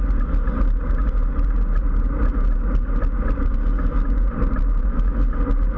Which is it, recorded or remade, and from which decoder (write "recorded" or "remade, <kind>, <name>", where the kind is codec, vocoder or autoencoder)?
recorded